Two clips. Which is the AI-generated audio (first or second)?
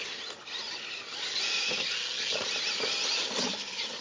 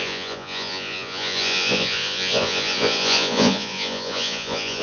second